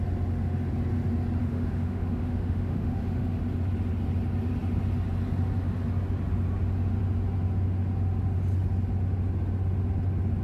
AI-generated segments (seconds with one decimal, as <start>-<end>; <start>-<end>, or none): 1.4-3.4